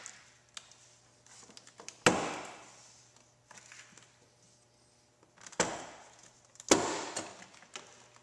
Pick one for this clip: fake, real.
real